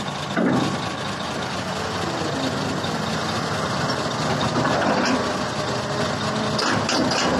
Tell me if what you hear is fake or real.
real